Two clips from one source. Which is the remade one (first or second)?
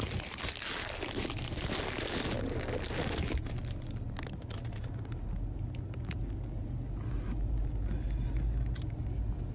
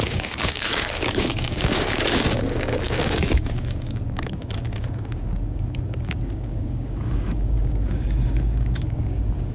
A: second